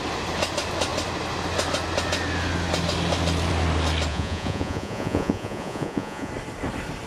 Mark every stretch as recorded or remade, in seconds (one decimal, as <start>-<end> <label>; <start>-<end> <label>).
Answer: 0.0-4.1 recorded; 4.1-6.3 remade; 6.3-7.1 recorded